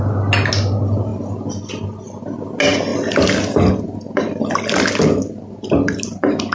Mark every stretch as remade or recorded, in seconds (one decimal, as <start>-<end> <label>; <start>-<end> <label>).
0.0-2.9 recorded; 2.9-3.7 remade; 3.7-6.5 recorded